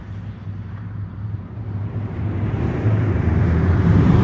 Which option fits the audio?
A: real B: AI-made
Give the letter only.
B